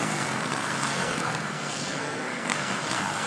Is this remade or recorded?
remade